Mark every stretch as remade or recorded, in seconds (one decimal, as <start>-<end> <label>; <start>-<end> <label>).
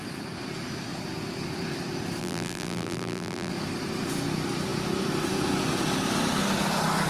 0.0-2.2 recorded; 2.2-3.5 remade; 3.5-7.1 recorded